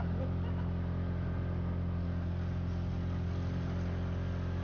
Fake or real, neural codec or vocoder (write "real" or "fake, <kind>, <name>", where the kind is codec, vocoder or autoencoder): real